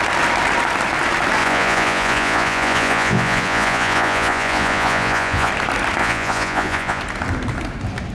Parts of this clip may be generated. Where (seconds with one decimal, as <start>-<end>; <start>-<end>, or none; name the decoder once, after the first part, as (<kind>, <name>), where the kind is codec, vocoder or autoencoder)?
1.4-5.5 (vocoder, Vocos); 6.0-7.0